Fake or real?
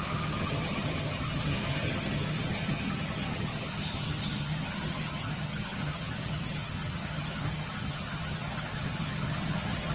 fake